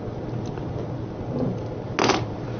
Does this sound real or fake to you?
real